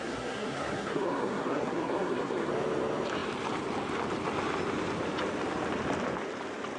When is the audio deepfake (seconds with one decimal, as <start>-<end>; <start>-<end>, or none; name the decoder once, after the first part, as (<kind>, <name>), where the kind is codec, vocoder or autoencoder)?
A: 0.0-2.5 (codec, SNAC)